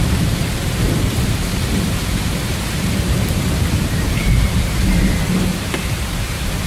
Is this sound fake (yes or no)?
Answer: yes